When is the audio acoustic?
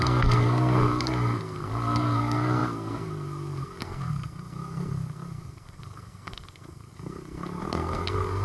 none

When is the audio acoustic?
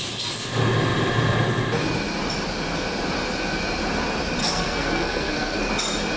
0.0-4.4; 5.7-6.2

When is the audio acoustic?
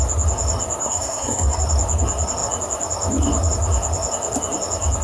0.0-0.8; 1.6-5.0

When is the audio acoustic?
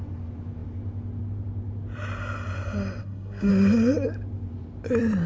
0.0-3.0; 3.5-5.3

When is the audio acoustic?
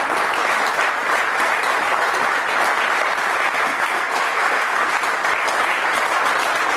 0.0-3.7; 4.9-6.8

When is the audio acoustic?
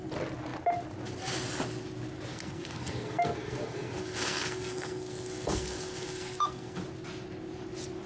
0.0-2.3; 6.8-8.1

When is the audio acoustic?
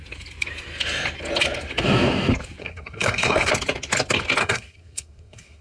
0.0-2.6; 3.5-4.4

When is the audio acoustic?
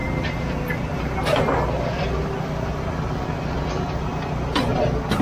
0.0-5.2